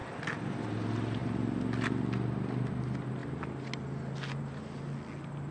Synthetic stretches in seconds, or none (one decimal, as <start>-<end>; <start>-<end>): none